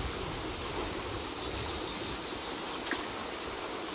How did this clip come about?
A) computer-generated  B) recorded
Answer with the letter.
A